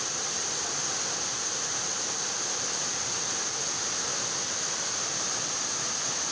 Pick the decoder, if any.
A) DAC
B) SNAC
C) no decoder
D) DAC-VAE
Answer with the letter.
C